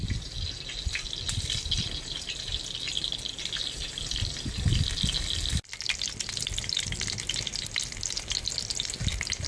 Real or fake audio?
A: real